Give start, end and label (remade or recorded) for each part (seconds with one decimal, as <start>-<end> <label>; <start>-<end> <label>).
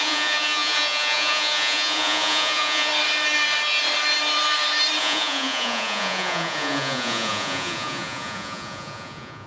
0.0-2.9 remade; 2.9-5.0 recorded; 5.0-9.5 remade